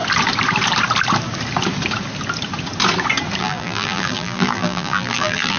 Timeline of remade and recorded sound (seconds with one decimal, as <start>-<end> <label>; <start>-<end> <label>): 0.0-3.4 recorded; 3.4-5.6 remade